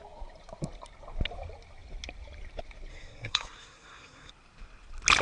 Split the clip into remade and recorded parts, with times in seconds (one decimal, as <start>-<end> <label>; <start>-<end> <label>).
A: 0.0-2.9 recorded; 2.9-4.3 remade; 4.3-5.2 recorded